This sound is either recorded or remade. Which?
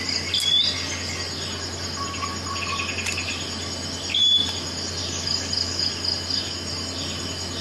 recorded